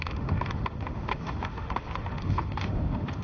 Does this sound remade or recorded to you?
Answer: remade